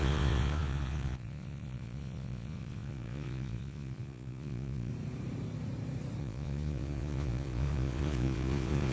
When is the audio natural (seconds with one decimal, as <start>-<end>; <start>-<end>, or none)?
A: 4.9-6.2

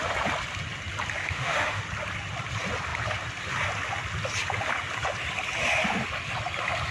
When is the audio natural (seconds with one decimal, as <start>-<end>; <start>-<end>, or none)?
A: 0.0-1.2; 1.8-6.9

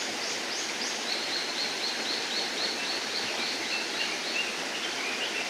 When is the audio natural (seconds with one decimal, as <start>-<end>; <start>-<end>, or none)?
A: 1.5-4.8

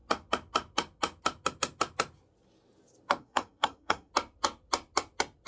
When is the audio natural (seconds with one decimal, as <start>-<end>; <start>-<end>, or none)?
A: 0.0-3.2; 4.1-5.5

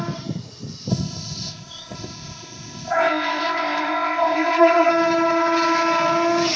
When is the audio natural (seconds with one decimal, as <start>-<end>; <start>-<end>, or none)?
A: 0.0-0.9; 4.9-6.6

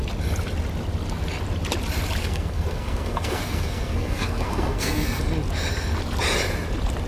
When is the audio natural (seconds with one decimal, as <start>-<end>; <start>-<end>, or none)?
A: 0.0-2.2; 5.2-7.1